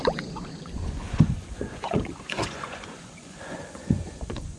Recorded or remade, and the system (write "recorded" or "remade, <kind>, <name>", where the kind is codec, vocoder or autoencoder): remade, vocoder, Vocos